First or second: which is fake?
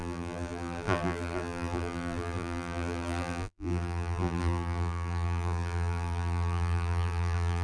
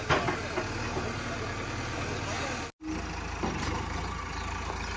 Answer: first